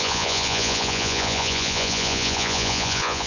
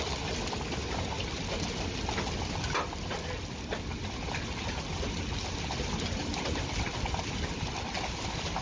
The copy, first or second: first